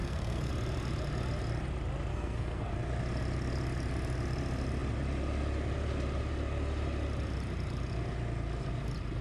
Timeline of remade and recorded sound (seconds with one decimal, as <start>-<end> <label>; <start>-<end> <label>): 0.0-0.5 remade; 0.5-2.1 recorded; 2.1-2.7 remade; 2.7-9.2 recorded